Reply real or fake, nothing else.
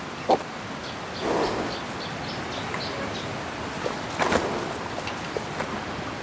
real